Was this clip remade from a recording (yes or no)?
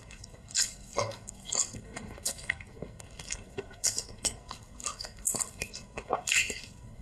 yes